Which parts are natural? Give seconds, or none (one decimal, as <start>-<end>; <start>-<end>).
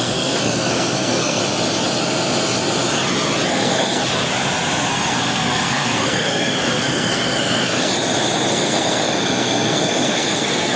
1.4-3.5; 4.0-4.9; 7.9-8.5